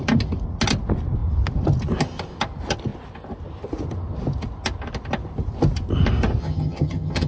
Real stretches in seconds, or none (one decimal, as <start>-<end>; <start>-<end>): 0.0-6.4